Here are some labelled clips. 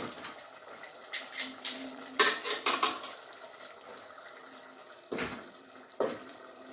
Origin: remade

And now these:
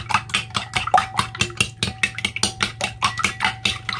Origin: recorded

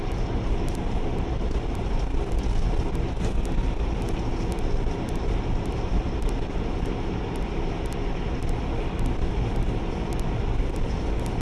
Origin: recorded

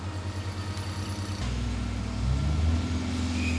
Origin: recorded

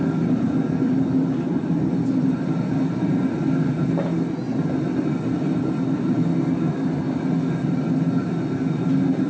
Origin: recorded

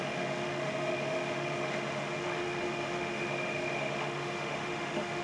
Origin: remade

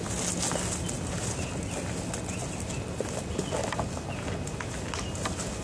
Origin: recorded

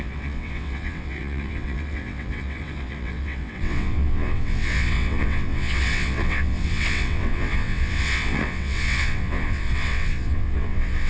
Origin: remade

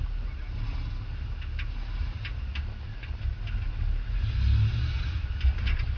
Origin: recorded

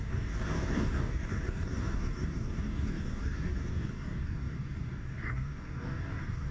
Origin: remade